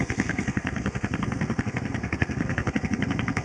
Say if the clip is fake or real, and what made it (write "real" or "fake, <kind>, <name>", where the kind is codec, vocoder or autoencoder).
fake, codec, SNAC